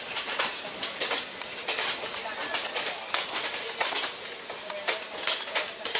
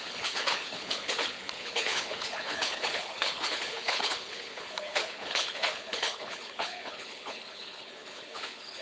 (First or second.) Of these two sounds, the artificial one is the second